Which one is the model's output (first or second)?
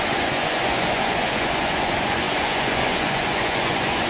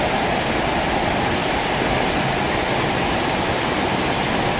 first